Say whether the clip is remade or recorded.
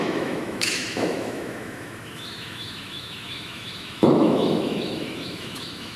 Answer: remade